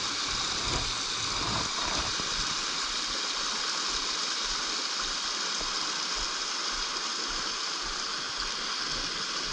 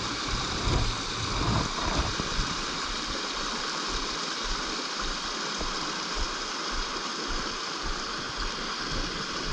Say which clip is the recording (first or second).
first